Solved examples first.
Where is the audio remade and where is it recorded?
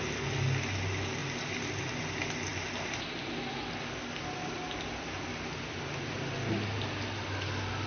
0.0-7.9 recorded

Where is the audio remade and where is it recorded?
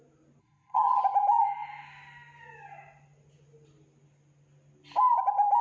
0.0-0.4 recorded; 0.4-1.0 remade; 1.0-5.6 recorded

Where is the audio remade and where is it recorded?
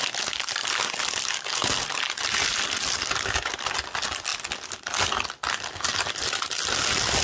0.0-7.2 recorded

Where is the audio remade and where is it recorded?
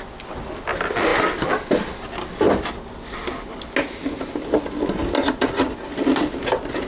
0.0-6.9 recorded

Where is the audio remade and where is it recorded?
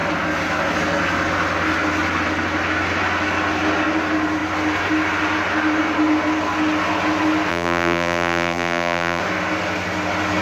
0.0-7.5 recorded; 7.5-9.2 remade; 9.2-10.4 recorded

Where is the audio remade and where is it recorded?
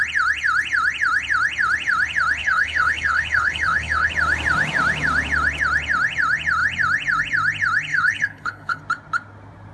0.0-2.4 recorded; 2.4-4.1 remade; 4.1-7.9 recorded; 7.9-8.8 remade; 8.8-9.7 recorded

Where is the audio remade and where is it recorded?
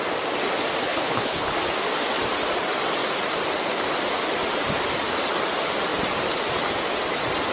0.0-0.8 recorded; 0.8-1.5 remade; 1.5-7.5 recorded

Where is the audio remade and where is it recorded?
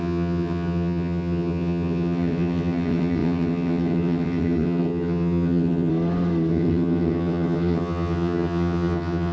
0.0-5.9 remade; 5.9-6.5 recorded; 6.5-9.3 remade